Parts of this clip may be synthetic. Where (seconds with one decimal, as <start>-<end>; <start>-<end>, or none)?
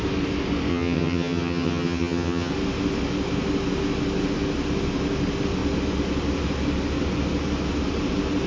0.7-2.5